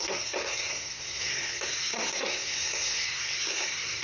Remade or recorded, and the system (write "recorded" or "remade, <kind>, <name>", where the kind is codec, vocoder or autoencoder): remade, codec, SNAC